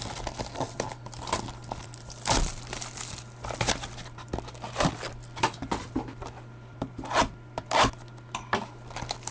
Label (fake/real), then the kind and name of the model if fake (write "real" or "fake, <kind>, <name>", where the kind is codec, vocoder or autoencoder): real